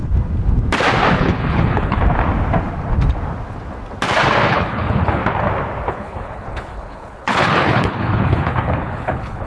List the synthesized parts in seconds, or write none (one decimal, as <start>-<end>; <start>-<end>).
1.1-2.0; 4.5-5.2; 5.9-9.5